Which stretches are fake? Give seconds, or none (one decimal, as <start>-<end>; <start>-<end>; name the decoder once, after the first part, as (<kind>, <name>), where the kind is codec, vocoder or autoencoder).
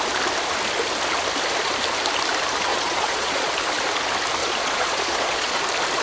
2.7-3.5 (vocoder, Vocos); 4.4-5.6